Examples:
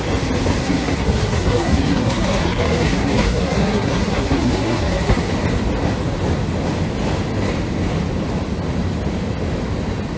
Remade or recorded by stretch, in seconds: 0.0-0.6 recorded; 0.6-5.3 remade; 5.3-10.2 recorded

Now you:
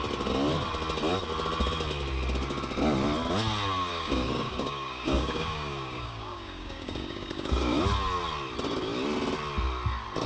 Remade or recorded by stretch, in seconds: 0.0-3.9 recorded; 3.9-7.8 remade; 7.8-10.3 recorded

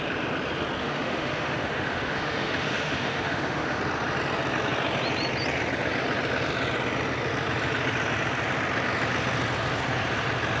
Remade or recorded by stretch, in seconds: 0.0-0.8 recorded; 0.8-3.8 remade; 3.8-10.6 recorded

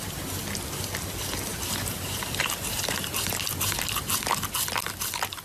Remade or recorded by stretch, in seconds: 0.0-1.5 recorded; 1.5-4.0 remade; 4.0-5.4 recorded

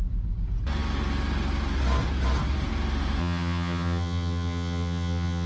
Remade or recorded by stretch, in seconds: 0.0-3.2 recorded; 3.2-5.5 remade

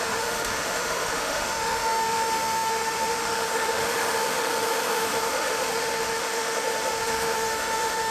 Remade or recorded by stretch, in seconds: 0.0-8.1 remade

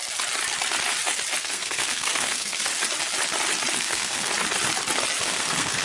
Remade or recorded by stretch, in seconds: 0.0-1.4 recorded; 1.4-2.7 remade; 2.7-3.8 recorded; 3.8-4.3 remade; 4.3-5.2 recorded; 5.2-5.8 remade